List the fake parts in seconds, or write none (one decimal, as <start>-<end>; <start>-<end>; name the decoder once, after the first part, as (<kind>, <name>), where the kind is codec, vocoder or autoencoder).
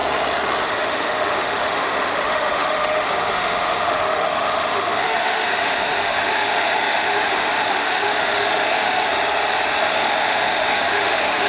0.6-9.1 (autoencoder, DAC-VAE); 9.8-11.5